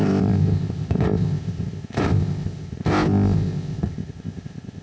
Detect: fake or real fake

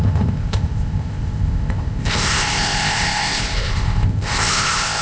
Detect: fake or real fake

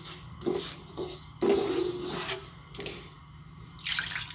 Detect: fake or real real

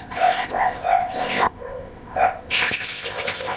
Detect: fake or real fake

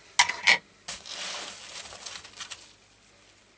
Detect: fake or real real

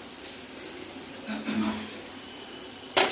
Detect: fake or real real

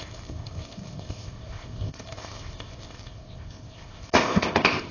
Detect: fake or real fake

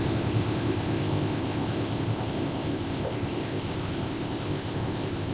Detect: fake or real fake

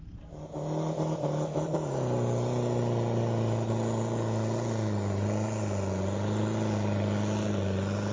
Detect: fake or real real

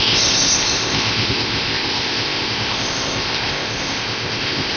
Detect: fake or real fake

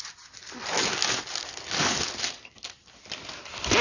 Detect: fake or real real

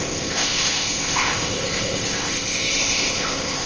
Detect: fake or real fake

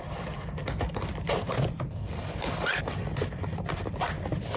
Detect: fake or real real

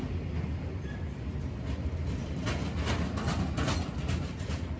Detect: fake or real real